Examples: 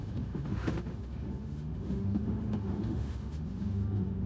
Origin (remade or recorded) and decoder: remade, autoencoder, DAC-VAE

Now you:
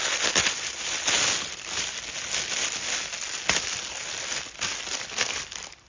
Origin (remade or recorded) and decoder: recorded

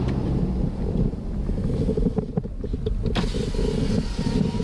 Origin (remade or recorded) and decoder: recorded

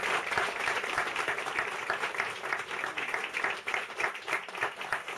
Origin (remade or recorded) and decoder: remade, vocoder, BigVGAN v2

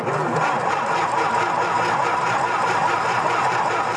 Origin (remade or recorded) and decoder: remade, vocoder, BigVGAN v2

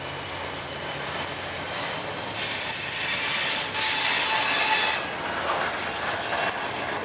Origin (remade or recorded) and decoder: recorded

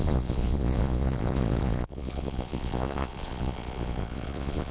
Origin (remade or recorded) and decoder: remade, vocoder, Vocos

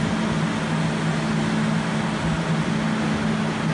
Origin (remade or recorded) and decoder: recorded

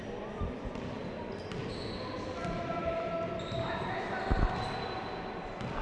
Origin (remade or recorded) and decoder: recorded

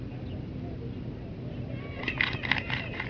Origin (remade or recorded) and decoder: recorded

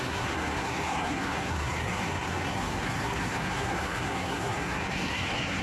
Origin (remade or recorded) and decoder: remade, codec, SNAC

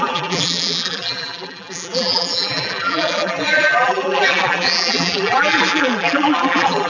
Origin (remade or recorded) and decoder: remade, vocoder, BigVGAN v2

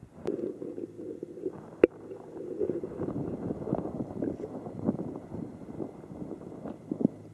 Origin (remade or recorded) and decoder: recorded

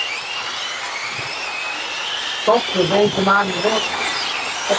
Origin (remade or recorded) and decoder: recorded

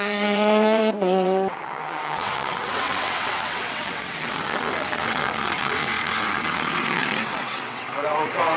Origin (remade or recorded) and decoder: remade, vocoder, WaveNeXt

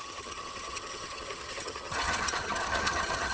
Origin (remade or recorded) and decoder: remade, vocoder, HiFi-GAN